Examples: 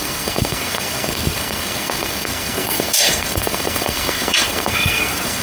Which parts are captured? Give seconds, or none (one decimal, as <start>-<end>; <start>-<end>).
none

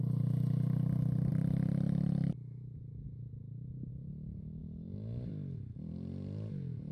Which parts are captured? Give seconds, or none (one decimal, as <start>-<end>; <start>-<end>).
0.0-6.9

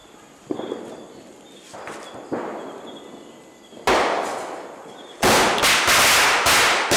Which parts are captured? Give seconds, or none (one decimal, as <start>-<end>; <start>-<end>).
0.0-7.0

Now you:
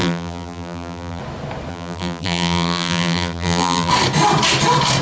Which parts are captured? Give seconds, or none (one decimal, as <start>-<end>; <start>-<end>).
1.2-1.7; 3.9-5.0